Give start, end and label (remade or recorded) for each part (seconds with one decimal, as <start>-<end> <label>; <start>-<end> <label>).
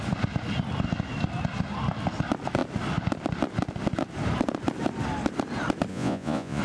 0.0-5.9 recorded; 5.9-6.6 remade